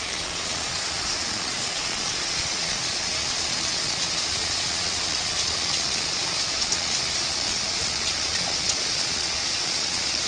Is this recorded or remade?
remade